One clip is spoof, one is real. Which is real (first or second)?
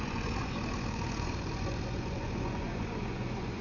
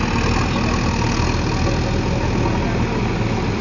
second